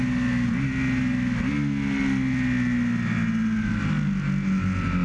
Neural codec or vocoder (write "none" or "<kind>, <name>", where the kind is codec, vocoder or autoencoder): none